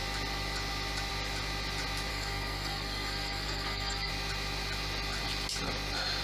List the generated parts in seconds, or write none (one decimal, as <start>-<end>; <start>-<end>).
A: 2.1-4.1